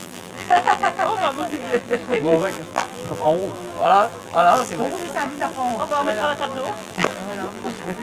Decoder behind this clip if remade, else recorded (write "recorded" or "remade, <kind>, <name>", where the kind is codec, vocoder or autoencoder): remade, vocoder, BigVGAN v2